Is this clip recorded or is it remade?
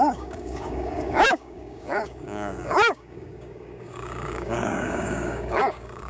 remade